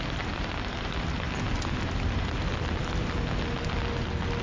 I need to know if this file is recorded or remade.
recorded